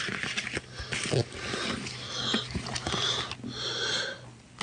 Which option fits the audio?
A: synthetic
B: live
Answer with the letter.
B